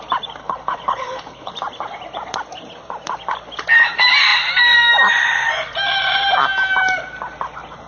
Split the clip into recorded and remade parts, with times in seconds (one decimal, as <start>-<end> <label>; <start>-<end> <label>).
0.0-0.4 recorded; 0.4-1.5 remade; 1.5-7.9 recorded